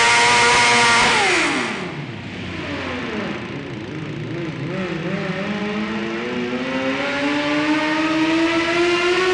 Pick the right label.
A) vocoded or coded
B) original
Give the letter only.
B